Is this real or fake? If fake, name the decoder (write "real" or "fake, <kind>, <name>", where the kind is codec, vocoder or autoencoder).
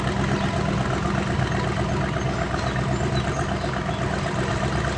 real